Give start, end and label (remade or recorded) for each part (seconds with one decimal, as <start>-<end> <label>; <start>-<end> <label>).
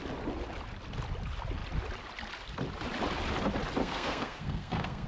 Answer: 0.0-3.8 recorded; 3.8-5.1 remade